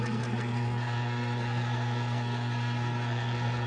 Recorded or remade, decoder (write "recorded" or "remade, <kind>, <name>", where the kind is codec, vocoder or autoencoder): remade, codec, SNAC